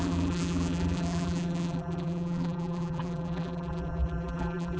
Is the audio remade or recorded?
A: remade